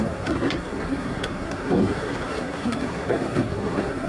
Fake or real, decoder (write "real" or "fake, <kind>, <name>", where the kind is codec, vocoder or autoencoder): fake, codec, SNAC